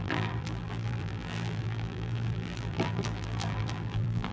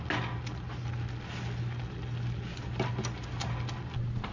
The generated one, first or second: first